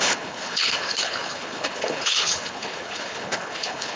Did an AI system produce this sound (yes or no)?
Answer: yes